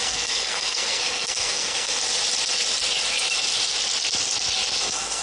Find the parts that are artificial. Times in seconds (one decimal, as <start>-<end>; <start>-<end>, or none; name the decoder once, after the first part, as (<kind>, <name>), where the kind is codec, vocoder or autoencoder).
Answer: 0.0-2.0 (codec, SNAC); 4.8-5.2